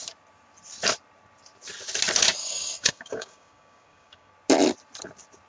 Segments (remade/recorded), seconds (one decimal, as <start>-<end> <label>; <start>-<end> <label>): 0.0-2.4 recorded; 2.4-4.3 remade; 4.3-5.5 recorded